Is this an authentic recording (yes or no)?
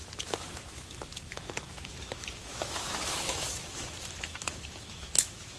no